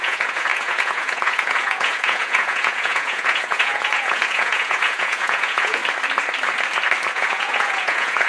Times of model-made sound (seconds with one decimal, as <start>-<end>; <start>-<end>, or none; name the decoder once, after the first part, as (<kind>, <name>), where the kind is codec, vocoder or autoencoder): 0.0-5.8 (vocoder, Vocos); 7.1-8.3